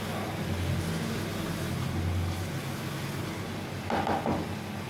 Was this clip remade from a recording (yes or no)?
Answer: no